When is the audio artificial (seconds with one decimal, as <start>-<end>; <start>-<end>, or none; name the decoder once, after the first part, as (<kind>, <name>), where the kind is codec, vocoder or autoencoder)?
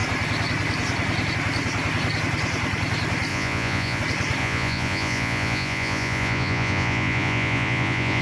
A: 3.3-4.0 (vocoder, Vocos); 4.4-8.2